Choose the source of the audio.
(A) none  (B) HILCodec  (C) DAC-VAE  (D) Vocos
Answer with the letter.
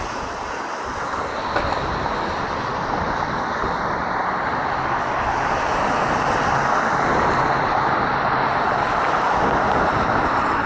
A